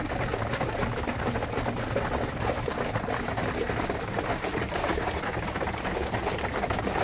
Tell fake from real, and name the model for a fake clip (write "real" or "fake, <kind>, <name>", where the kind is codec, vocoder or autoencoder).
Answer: real